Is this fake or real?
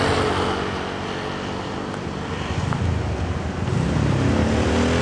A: real